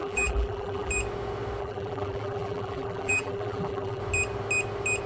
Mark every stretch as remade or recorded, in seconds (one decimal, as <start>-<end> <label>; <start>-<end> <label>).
0.0-0.9 remade; 0.9-1.6 recorded; 1.6-4.0 remade; 4.0-5.1 recorded

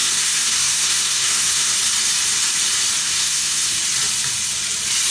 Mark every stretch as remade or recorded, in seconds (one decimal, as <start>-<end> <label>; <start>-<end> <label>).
0.0-1.7 remade; 1.7-3.0 recorded; 3.0-3.8 remade; 3.8-5.1 recorded